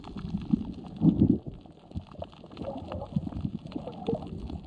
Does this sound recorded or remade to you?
recorded